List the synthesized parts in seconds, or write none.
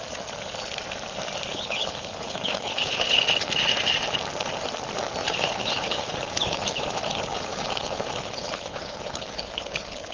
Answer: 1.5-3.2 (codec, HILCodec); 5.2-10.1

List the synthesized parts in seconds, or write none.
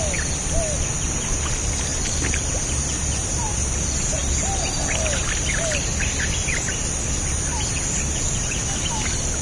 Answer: none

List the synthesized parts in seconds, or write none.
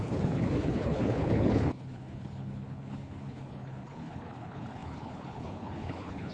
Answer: 0.0-6.3 (codec, HILCodec)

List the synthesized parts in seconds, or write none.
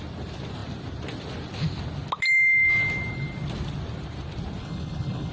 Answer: 4.6-5.3 (codec, HILCodec)